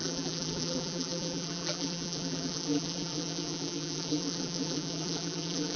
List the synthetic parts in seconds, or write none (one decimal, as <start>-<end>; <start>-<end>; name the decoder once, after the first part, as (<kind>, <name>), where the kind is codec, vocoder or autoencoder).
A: 0.0-5.8 (vocoder, BigVGAN v2)